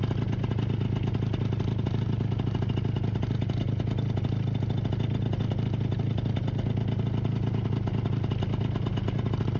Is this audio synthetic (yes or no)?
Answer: no